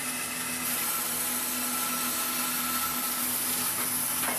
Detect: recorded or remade recorded